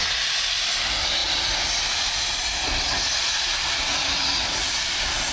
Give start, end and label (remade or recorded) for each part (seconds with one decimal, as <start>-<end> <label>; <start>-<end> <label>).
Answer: 0.0-5.3 recorded